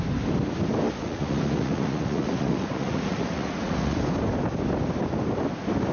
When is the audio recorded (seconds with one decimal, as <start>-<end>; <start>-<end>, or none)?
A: 0.0-1.0; 4.0-5.9